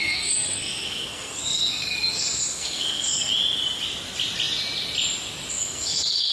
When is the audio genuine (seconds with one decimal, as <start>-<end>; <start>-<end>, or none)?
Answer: 3.3-5.5